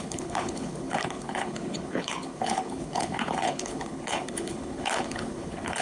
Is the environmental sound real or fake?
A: fake